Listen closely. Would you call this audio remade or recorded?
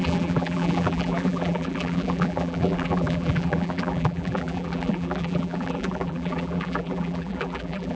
remade